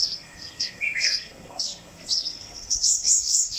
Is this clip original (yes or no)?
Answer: no